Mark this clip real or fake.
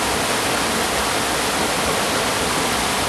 real